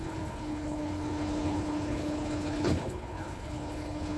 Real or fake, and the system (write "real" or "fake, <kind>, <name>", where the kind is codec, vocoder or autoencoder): fake, codec, HILCodec